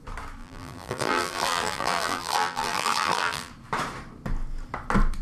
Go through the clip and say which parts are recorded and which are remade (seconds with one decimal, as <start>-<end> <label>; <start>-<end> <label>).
0.0-0.4 recorded; 0.4-3.5 remade; 3.5-5.2 recorded